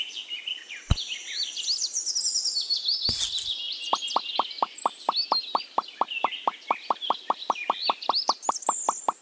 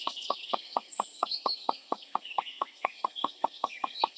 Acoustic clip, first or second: first